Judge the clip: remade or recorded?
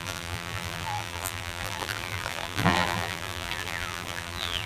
remade